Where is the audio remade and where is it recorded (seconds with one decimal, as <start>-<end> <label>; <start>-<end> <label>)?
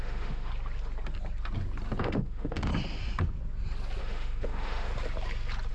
0.0-0.5 remade; 0.5-2.0 recorded; 2.0-2.7 remade; 2.7-4.0 recorded; 4.0-4.9 remade; 4.9-5.7 recorded